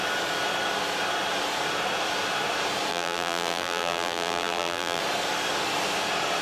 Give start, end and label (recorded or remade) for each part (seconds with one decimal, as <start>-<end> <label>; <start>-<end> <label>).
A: 0.0-2.9 recorded; 2.9-5.0 remade; 5.0-6.4 recorded